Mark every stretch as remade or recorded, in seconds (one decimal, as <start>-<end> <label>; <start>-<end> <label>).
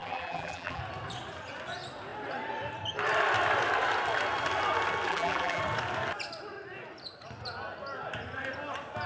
0.0-0.8 remade; 0.8-5.1 recorded; 5.1-5.6 remade; 5.6-9.1 recorded